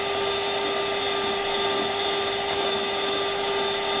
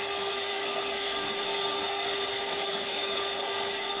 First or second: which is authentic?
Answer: first